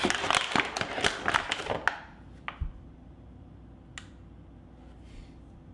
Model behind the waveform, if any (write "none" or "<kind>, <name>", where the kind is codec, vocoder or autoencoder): none